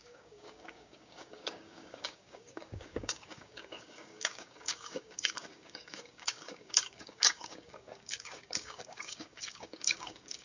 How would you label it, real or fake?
fake